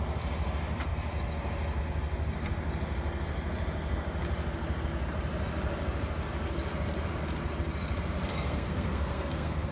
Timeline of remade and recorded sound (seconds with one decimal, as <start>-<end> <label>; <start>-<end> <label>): 0.0-8.3 recorded; 8.3-9.7 remade